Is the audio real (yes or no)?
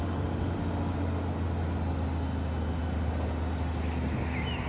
yes